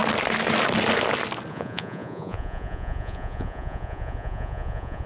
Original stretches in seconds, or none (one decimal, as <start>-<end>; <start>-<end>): 0.0-1.5